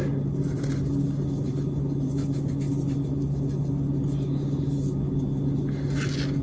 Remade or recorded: recorded